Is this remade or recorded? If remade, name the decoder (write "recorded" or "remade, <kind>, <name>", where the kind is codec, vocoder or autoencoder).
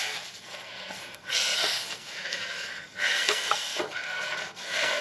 remade, codec, SNAC